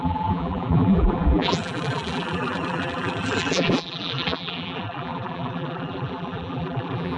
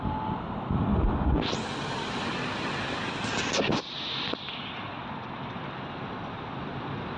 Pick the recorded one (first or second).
second